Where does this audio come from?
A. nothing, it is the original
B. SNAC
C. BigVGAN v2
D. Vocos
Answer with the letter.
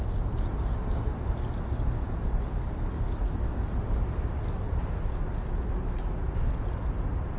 A